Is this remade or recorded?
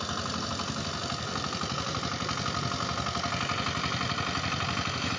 recorded